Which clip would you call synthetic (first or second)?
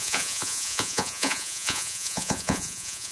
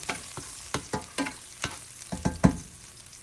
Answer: first